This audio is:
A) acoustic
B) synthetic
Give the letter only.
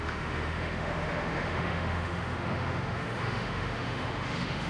B